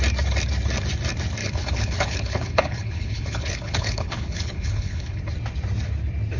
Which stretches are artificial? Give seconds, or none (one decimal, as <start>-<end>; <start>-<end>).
1.4-5.2